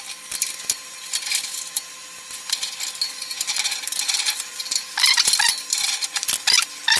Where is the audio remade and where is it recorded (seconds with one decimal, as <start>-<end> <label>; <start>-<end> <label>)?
0.0-7.0 recorded